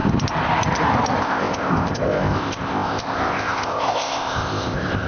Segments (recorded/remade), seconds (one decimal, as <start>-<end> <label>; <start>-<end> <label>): 0.0-1.2 recorded; 1.2-5.1 remade